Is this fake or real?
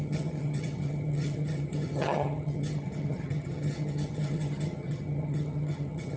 fake